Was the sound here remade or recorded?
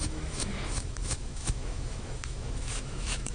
remade